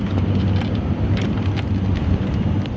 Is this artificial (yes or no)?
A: no